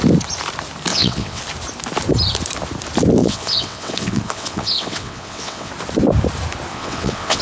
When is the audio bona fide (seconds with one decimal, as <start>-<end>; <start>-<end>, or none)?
0.0-0.9; 1.4-3.2; 5.7-6.7